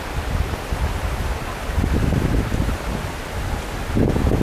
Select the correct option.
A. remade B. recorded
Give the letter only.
B